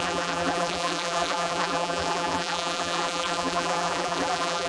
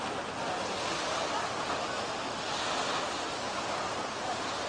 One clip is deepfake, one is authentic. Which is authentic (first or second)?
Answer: second